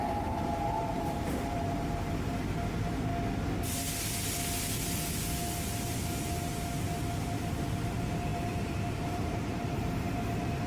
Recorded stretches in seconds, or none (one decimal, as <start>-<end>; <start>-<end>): 3.1-7.8